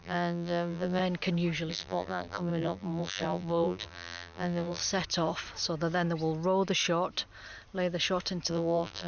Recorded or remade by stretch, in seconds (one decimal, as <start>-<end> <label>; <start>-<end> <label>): 0.0-1.0 remade; 1.0-1.7 recorded; 1.7-4.8 remade; 4.8-8.5 recorded; 8.5-9.1 remade